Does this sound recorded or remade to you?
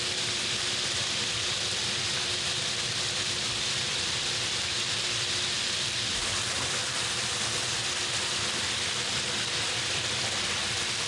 remade